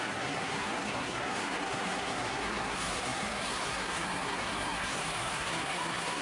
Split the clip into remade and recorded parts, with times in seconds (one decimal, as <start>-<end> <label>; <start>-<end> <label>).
0.0-6.2 remade